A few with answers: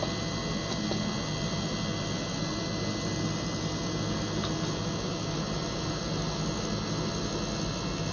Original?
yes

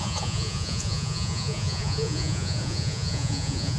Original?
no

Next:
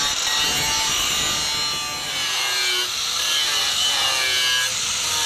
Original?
yes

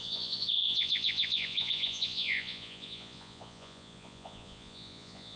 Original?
no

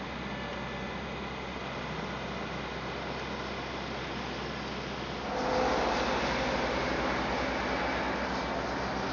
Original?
yes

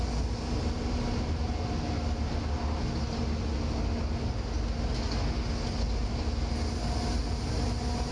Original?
yes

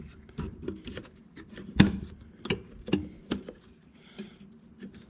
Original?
yes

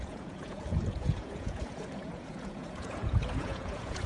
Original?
no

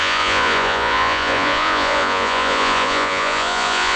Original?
no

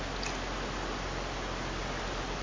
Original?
yes